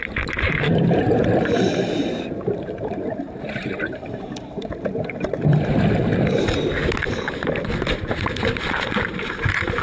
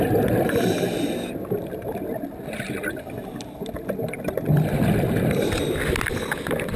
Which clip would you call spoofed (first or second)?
first